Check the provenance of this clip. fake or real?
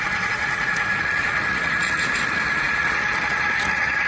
fake